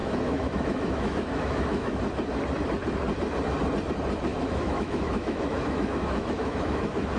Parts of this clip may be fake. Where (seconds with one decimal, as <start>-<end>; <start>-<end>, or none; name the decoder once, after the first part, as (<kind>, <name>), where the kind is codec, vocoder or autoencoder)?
0.0-2.0 (autoencoder, DAC-VAE); 4.3-7.2